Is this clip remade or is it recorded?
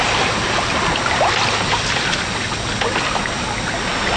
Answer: recorded